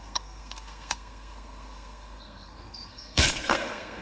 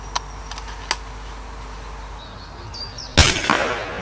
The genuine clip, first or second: second